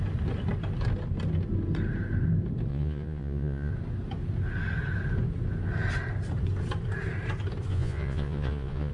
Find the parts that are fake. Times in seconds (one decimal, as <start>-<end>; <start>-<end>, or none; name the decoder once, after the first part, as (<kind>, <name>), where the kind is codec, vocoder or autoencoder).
2.7-3.7 (vocoder, Vocos); 7.7-8.9